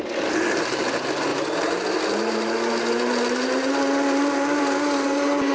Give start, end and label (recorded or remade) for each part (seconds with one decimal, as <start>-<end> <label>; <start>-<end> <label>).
0.0-5.5 recorded